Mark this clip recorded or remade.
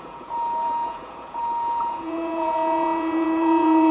remade